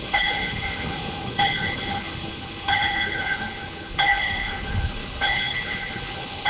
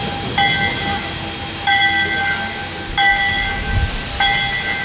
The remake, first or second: first